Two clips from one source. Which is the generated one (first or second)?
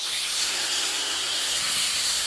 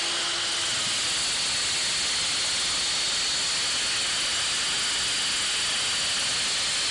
first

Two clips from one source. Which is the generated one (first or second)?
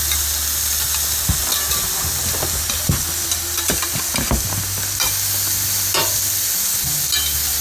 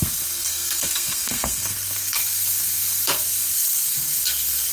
second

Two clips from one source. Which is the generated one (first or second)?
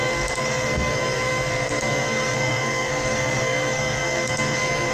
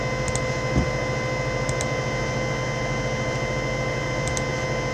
first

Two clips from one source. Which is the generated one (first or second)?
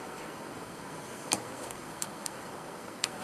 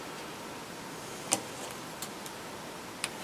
first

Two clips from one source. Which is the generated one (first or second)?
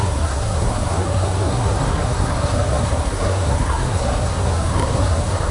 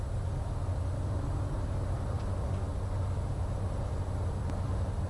first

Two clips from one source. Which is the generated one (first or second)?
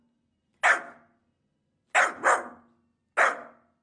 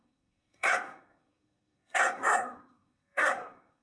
second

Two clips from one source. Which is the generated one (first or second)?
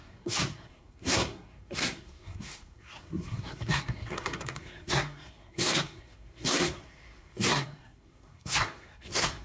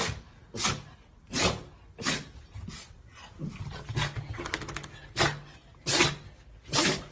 first